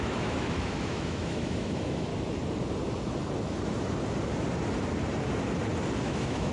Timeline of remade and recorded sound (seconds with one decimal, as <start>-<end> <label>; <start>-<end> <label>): 0.0-2.1 remade; 2.1-6.0 recorded; 6.0-6.5 remade